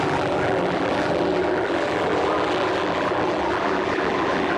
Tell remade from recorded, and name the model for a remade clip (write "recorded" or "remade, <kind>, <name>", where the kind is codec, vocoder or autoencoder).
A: remade, vocoder, BigVGAN v2